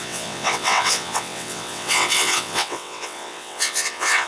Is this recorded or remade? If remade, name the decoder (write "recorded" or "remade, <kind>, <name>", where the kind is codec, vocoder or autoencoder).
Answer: remade, vocoder, WaveNeXt